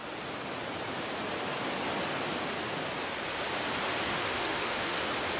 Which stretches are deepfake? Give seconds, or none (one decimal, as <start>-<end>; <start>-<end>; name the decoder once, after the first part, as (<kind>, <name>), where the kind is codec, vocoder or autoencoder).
4.1-5.0 (autoencoder, DAC-VAE)